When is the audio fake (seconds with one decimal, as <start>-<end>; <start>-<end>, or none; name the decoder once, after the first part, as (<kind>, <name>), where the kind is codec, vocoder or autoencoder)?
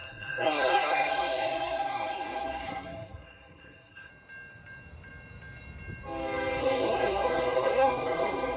0.0-4.1 (codec, SNAC); 6.6-8.6